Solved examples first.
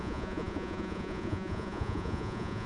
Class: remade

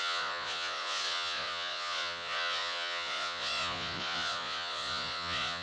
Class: remade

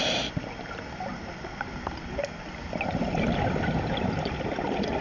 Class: recorded